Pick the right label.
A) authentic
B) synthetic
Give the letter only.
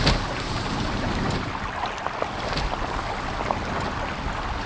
A